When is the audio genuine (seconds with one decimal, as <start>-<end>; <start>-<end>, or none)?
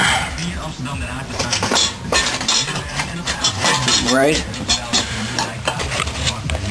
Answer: 0.4-1.0